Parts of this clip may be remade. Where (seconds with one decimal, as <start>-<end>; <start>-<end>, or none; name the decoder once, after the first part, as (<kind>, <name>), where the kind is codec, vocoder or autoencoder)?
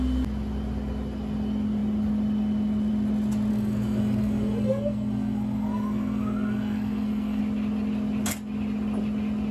3.5-7.4 (codec, SNAC)